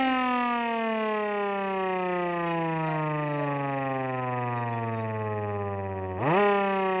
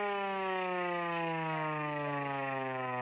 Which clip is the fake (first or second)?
second